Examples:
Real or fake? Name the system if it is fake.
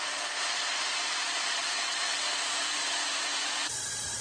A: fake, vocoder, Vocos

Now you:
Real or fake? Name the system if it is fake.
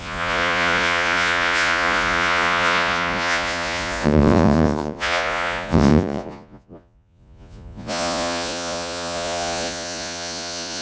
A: fake, vocoder, Vocos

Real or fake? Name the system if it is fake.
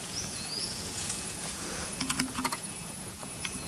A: fake, vocoder, Vocos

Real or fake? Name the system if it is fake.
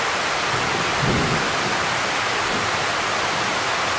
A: real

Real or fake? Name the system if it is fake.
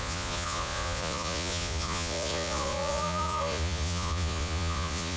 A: fake, vocoder, Vocos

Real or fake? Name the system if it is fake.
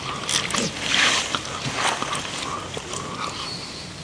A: real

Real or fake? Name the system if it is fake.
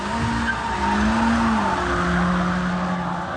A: real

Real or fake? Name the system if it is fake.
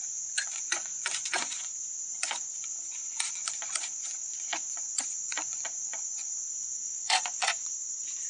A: fake, vocoder, Vocos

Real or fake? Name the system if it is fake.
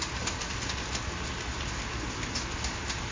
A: real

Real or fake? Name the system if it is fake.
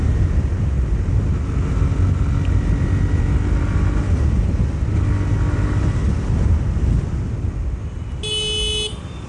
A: real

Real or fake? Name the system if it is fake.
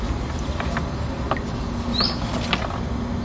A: real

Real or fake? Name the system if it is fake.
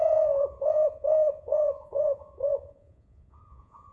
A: fake, vocoder, Vocos